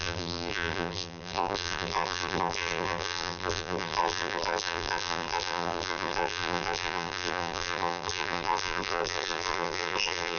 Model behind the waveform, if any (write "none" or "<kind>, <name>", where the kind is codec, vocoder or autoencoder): vocoder, BigVGAN v2